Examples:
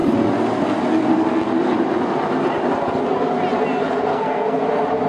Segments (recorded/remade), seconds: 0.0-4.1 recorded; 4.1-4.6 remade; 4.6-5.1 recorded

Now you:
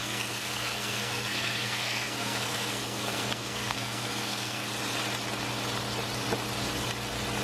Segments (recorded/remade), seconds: 0.0-4.7 remade; 4.7-7.4 recorded

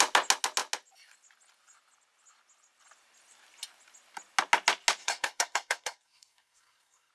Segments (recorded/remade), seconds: 0.0-5.0 recorded; 5.0-7.1 remade

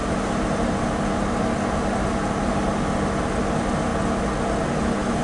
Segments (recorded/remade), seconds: 0.0-5.2 recorded

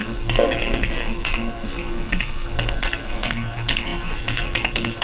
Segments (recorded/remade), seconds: 0.0-5.0 remade

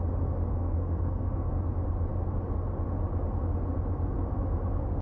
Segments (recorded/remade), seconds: 0.0-0.5 recorded; 0.5-1.5 remade; 1.5-5.0 recorded

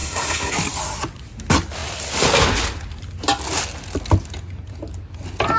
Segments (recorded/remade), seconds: 0.0-0.5 remade; 0.5-5.6 recorded

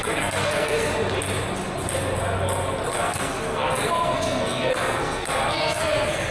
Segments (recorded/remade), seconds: 0.0-0.9 remade; 0.9-2.9 recorded; 2.9-6.3 remade